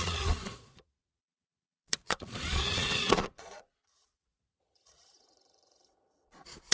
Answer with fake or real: fake